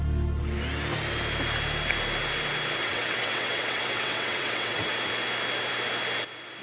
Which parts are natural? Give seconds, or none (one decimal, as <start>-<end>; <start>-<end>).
0.0-2.8; 4.9-6.6